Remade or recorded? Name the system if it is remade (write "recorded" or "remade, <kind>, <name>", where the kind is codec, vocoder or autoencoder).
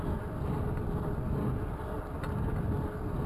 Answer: recorded